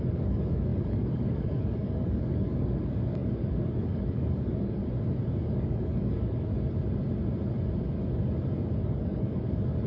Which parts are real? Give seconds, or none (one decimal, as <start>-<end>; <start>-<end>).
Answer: 4.8-5.4; 6.5-8.8